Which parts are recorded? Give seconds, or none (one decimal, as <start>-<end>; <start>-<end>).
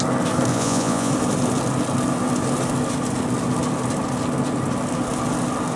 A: 0.0-0.5; 1.1-5.8